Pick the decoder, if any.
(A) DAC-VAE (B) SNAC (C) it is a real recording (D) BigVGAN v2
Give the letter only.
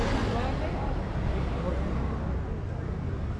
C